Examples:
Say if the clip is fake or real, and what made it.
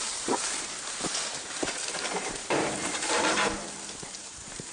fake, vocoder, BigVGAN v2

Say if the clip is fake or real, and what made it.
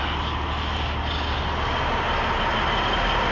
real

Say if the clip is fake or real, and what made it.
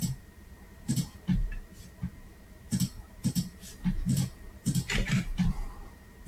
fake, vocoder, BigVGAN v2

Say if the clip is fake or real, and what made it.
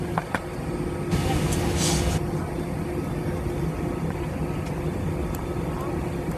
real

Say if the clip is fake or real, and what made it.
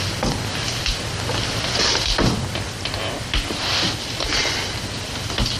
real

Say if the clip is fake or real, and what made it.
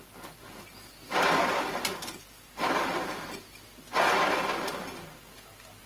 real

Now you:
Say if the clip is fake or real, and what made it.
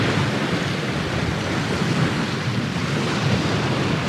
real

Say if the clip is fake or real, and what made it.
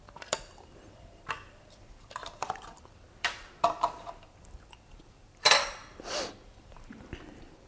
fake, vocoder, BigVGAN v2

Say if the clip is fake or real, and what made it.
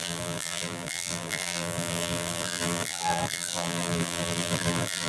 fake, vocoder, BigVGAN v2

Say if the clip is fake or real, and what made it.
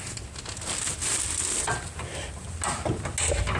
real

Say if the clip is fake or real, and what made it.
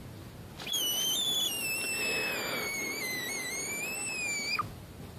fake, vocoder, BigVGAN v2